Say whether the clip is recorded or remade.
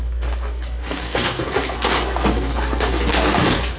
remade